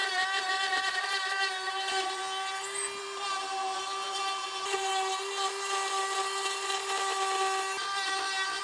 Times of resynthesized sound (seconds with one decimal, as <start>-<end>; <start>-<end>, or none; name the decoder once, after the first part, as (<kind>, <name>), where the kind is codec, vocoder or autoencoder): 0.7-2.2 (vocoder, BigVGAN v2); 3.0-4.9

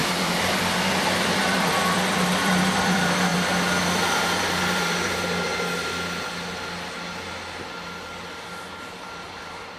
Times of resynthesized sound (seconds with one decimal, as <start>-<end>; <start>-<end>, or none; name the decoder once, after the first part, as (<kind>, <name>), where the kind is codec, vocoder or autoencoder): 0.0-5.5 (vocoder, BigVGAN v2); 9.1-9.8

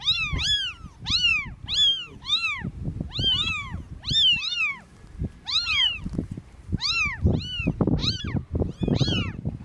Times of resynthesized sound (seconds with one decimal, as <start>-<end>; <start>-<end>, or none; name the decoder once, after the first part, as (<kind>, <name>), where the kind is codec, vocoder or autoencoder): 5.2-6.7 (vocoder, BigVGAN v2); 8.0-9.6

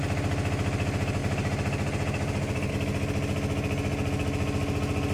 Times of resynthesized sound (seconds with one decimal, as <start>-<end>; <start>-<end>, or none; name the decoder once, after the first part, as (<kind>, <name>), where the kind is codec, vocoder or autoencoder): 1.2-2.7 (vocoder, BigVGAN v2)

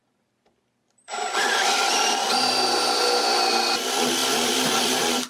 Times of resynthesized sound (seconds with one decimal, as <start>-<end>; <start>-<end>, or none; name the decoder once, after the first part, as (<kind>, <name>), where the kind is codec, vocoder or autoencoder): none

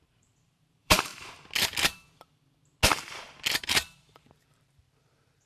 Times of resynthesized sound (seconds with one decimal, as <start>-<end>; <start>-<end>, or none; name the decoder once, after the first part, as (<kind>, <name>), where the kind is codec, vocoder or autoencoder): 0.0-1.1 (vocoder, BigVGAN v2); 3.6-5.5